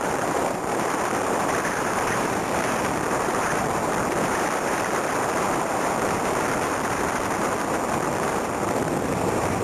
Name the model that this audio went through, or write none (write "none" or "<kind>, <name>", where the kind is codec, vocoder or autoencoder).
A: vocoder, BigVGAN v2